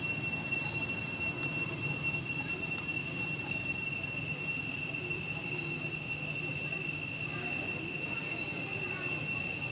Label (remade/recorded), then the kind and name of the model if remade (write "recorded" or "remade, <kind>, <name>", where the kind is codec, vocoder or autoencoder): recorded